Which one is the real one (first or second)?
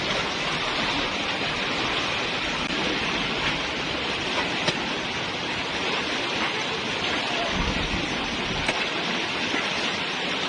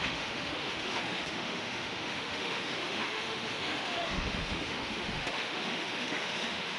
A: first